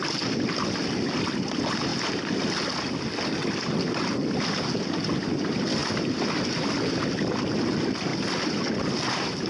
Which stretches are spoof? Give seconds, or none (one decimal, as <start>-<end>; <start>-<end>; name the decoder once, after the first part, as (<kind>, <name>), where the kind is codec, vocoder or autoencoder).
none